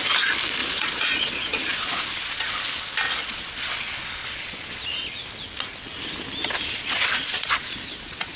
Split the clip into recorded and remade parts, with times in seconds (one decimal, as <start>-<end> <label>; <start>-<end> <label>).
0.0-0.6 recorded; 0.6-2.5 remade; 2.5-3.2 recorded; 3.2-4.8 remade; 4.8-7.2 recorded; 7.2-8.4 remade